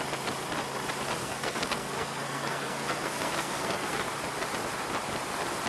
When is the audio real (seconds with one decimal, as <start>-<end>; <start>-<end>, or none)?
0.0-1.2; 4.1-5.7